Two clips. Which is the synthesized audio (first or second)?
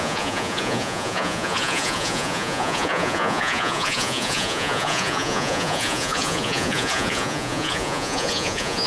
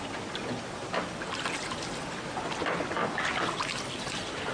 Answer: first